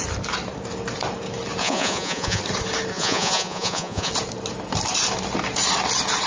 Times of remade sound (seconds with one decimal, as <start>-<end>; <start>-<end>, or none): 1.6-2.4; 2.9-4.1